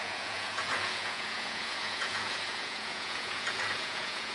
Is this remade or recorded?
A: remade